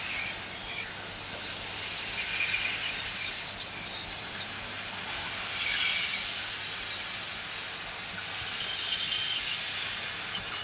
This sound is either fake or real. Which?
real